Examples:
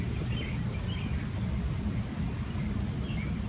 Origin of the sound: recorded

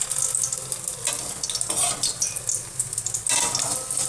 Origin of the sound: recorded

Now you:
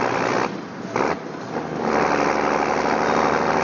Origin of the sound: recorded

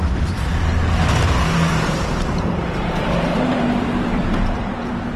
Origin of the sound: remade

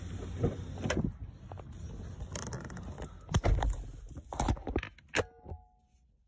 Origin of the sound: recorded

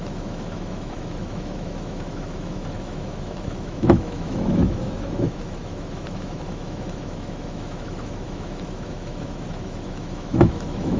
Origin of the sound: remade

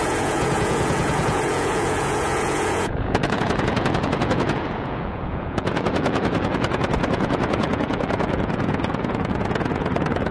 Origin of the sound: remade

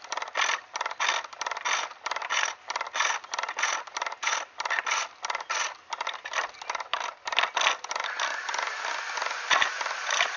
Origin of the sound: recorded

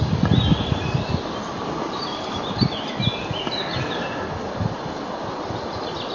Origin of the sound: recorded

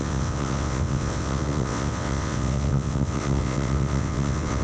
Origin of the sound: remade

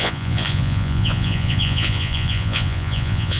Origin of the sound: remade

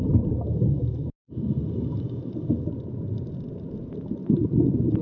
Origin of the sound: recorded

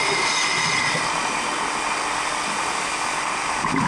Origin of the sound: recorded